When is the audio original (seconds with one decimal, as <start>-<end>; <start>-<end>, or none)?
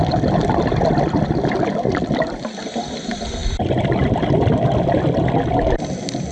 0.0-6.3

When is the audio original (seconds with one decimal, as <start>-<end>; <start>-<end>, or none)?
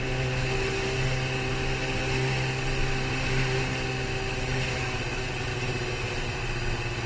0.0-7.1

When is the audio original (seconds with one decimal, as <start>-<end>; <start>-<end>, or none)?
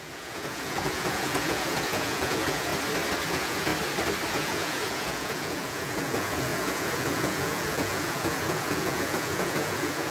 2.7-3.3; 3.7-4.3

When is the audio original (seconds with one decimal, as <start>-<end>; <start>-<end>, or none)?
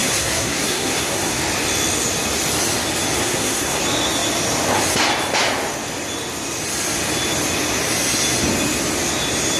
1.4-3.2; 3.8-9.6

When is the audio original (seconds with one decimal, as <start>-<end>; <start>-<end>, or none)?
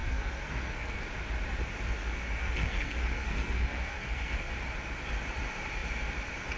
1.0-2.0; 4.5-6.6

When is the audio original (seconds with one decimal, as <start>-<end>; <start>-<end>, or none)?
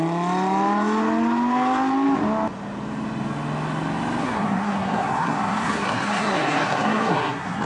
0.0-4.2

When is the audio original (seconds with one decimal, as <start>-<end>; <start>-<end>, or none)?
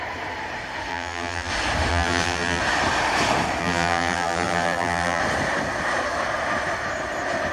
0.0-0.9; 1.5-1.9; 2.6-3.6; 5.2-7.5